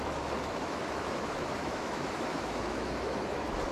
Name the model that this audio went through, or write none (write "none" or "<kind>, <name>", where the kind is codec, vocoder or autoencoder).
autoencoder, DAC-VAE